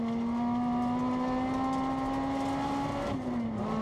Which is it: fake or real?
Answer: real